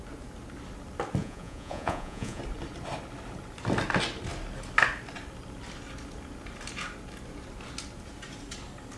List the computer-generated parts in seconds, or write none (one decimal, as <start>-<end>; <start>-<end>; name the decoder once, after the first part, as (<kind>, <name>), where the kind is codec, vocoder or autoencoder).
1.2-2.4 (vocoder, Vocos)